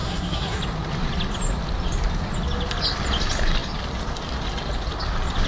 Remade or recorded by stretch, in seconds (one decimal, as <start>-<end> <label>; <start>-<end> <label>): 0.0-0.6 remade; 0.6-5.5 recorded